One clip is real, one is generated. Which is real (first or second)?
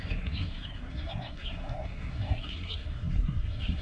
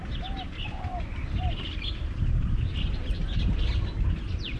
second